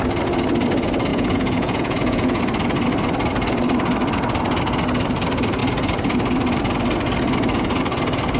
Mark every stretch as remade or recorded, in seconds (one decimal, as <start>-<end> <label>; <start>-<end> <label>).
0.0-1.1 recorded; 1.1-2.4 remade; 2.4-8.4 recorded